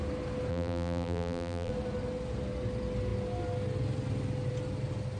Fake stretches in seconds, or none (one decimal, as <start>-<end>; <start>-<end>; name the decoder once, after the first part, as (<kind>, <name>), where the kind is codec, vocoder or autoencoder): 0.5-1.7 (vocoder, BigVGAN v2)